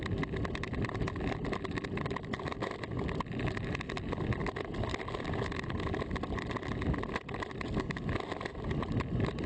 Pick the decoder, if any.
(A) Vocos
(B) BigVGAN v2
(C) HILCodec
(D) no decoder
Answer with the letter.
D